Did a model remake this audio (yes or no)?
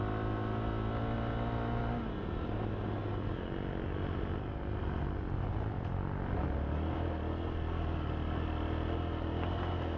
no